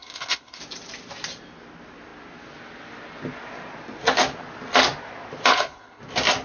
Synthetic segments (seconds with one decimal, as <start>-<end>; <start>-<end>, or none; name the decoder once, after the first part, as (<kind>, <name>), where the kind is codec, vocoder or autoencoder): 0.0-0.6 (codec, HILCodec); 5.5-6.0